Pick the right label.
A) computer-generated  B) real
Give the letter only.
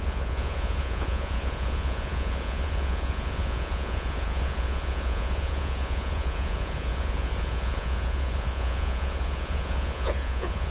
A